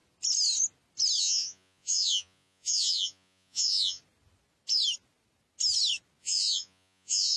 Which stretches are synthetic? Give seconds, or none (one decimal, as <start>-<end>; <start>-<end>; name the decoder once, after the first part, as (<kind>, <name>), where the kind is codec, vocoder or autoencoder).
1.2-4.0 (vocoder, Vocos); 6.2-7.4